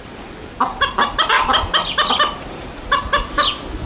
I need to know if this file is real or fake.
real